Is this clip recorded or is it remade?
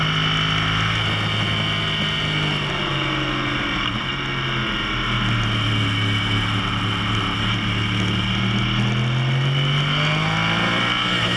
recorded